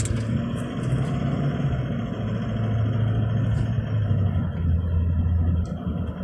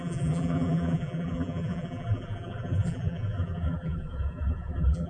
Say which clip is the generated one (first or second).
second